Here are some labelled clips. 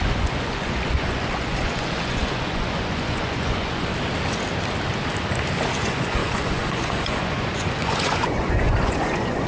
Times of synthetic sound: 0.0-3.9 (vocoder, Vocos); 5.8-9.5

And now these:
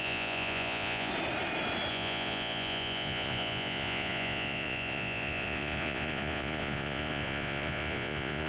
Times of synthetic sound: 0.0-1.1 (vocoder, Vocos); 1.9-8.5

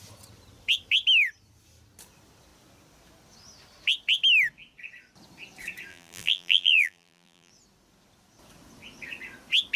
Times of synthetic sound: 5.9-7.5 (vocoder, BigVGAN v2)

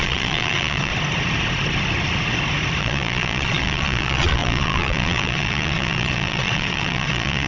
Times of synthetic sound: 0.0-0.9 (vocoder, Vocos); 2.8-7.5

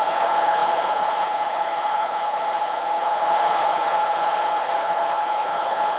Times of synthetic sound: 0.0-6.0 (codec, HILCodec)

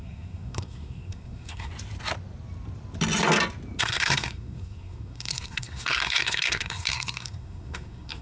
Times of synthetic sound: 0.0-1.7 (codec, SNAC); 3.8-8.2

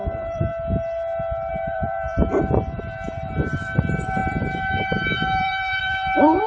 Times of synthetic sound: 0.0-0.5 (vocoder, BigVGAN v2); 1.5-6.5

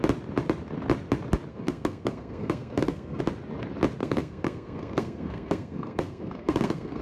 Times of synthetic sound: 1.5-3.2 (codec, SNAC); 4.0-7.0